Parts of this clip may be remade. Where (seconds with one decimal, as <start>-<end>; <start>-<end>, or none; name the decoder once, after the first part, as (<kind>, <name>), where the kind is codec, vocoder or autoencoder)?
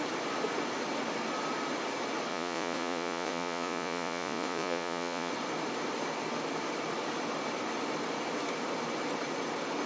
2.3-5.3 (vocoder, Vocos)